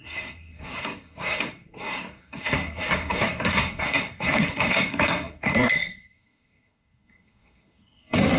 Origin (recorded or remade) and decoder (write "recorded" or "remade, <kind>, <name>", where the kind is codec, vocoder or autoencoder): remade, codec, SNAC